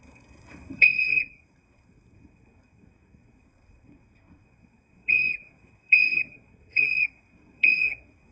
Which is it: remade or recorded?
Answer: remade